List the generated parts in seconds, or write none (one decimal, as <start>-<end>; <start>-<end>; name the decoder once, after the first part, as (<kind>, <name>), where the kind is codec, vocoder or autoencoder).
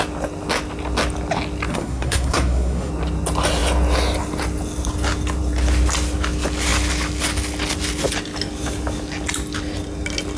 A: 1.7-2.9 (codec, SNAC)